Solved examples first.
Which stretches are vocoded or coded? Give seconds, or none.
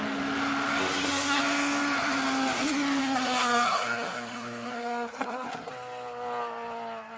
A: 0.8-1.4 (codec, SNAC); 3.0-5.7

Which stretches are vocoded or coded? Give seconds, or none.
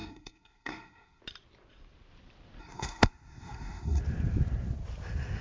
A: 0.0-1.2 (codec, SNAC); 2.6-4.0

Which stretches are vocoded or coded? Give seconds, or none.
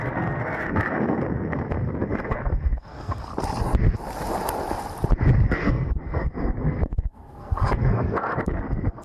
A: 0.0-3.3 (codec, SNAC); 5.5-9.0